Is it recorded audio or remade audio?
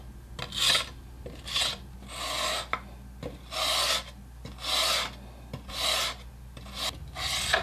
recorded